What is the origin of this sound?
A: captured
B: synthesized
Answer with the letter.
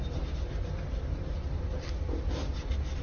A